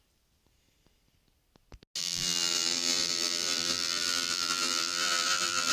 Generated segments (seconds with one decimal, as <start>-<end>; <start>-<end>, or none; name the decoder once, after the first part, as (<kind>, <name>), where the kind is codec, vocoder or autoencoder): 2.0-5.7 (vocoder, BigVGAN v2)